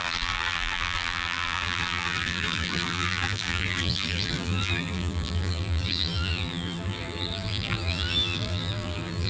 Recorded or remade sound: remade